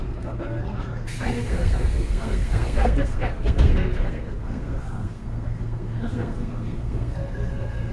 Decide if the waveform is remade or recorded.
remade